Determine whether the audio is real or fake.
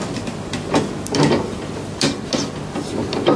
real